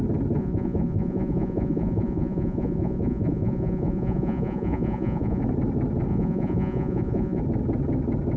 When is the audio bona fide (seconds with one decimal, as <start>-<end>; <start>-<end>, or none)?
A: 0.0-0.4; 5.4-6.1; 7.4-8.4